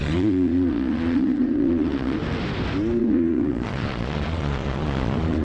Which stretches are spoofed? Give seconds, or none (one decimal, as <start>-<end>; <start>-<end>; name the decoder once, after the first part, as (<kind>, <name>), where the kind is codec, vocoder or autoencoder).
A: 0.0-2.2 (vocoder, Vocos); 3.0-5.4